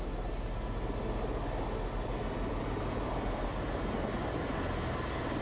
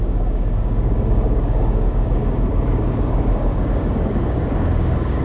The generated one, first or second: second